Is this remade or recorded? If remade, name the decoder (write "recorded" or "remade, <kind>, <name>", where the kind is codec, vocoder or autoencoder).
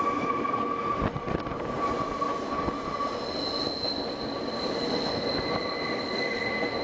recorded